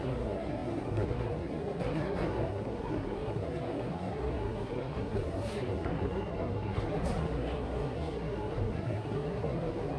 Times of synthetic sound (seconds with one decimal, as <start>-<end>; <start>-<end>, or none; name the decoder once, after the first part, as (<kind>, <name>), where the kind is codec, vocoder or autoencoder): 0.0-10.0 (codec, SNAC)